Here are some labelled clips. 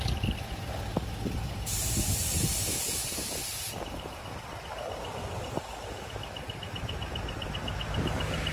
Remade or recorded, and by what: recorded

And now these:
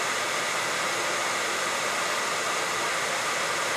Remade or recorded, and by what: recorded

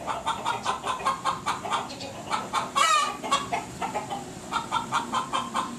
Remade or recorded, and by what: remade, vocoder, BigVGAN v2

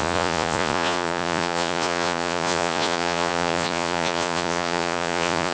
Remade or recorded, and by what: remade, vocoder, Vocos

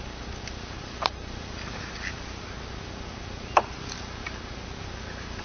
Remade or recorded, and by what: recorded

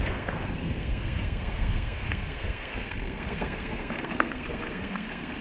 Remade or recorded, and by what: remade, codec, SNAC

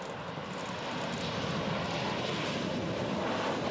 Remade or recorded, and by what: recorded